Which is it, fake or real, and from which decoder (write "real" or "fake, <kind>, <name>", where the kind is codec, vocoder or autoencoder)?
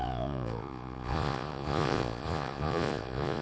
fake, vocoder, Vocos